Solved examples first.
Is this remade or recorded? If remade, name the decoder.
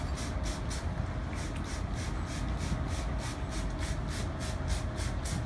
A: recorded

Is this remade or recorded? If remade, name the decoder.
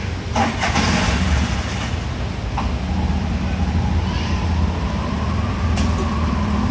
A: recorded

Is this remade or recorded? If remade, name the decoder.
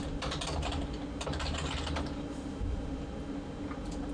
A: recorded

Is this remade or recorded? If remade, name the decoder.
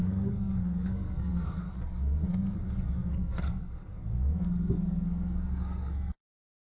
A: remade, codec, SNAC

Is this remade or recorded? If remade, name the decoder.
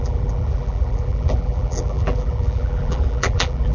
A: remade, vocoder, BigVGAN v2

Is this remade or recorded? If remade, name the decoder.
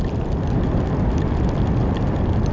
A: recorded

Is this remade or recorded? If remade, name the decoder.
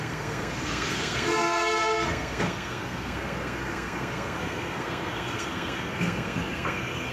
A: remade, codec, SNAC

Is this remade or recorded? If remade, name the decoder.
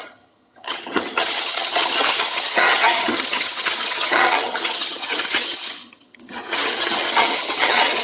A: remade, vocoder, HiFi-GAN